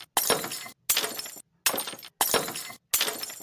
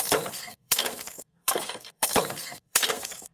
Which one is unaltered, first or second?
first